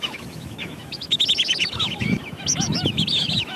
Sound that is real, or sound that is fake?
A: fake